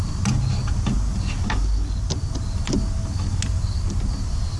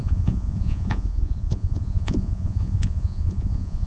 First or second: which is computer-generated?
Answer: second